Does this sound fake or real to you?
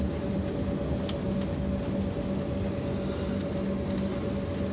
real